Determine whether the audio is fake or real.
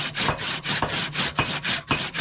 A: real